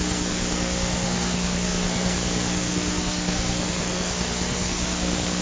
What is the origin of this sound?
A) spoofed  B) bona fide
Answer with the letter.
A